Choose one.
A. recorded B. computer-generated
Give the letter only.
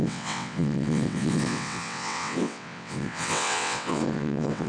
B